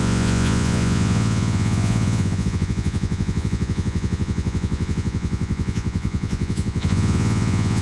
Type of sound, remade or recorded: remade